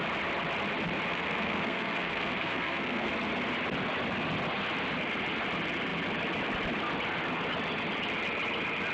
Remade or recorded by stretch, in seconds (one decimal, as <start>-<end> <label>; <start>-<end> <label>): 0.0-1.1 recorded; 1.1-3.1 remade; 3.1-8.9 recorded

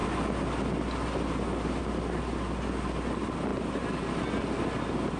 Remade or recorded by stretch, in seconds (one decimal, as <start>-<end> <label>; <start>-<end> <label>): 0.0-5.2 recorded

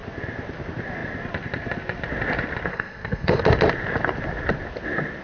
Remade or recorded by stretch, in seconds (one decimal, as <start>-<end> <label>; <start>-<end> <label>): 0.0-2.7 recorded; 2.7-3.4 remade; 3.4-5.2 recorded

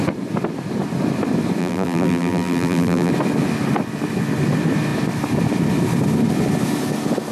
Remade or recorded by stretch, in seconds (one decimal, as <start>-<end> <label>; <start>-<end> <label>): 0.0-1.6 recorded; 1.6-3.1 remade; 3.1-7.3 recorded

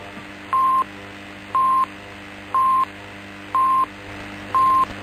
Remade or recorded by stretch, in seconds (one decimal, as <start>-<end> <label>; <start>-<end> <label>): 0.0-5.0 recorded

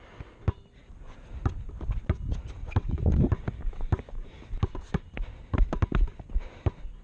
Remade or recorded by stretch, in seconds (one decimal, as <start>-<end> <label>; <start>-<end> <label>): 0.0-2.6 recorded; 2.6-3.2 remade; 3.2-7.0 recorded

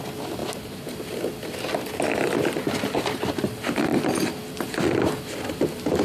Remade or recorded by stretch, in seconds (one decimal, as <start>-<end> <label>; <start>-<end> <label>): 0.0-6.0 recorded

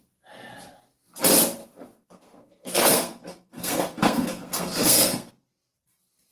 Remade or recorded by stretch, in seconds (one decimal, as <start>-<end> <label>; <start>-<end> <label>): 0.0-1.6 recorded; 1.6-5.3 remade; 5.3-6.3 recorded